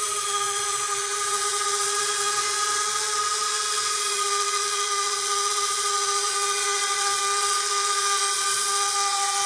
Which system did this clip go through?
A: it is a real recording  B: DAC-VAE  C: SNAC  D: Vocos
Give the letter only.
D